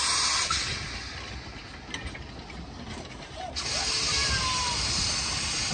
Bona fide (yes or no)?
yes